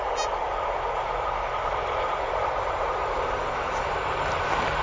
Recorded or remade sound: recorded